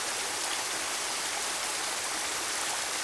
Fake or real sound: real